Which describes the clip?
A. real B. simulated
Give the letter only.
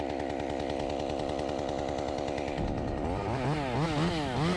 A